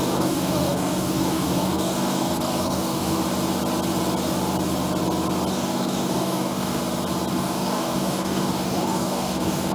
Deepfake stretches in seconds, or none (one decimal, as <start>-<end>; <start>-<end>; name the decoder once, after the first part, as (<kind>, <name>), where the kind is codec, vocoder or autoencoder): 0.0-3.2 (codec, DAC); 5.5-6.8; 7.3-9.7